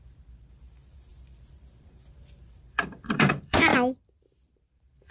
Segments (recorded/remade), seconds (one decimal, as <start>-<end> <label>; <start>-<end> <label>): 0.0-3.7 remade; 3.7-4.2 recorded; 4.2-5.1 remade